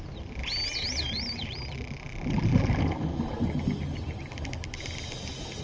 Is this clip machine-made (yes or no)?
no